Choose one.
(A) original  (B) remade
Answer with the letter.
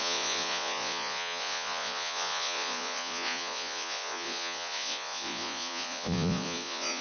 B